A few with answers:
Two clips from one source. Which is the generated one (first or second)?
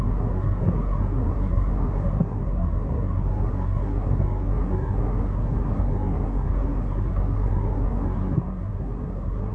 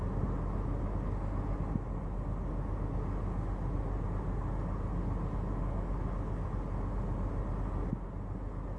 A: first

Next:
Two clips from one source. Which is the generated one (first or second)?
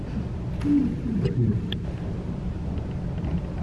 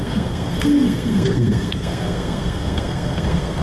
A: second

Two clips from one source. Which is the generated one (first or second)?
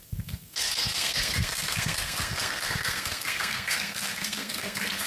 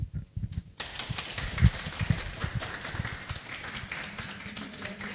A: first